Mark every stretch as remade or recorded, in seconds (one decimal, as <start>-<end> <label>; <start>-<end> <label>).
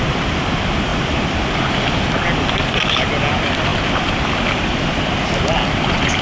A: 0.0-6.2 recorded